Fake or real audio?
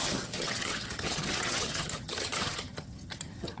fake